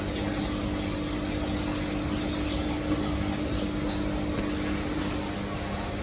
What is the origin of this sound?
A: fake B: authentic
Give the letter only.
B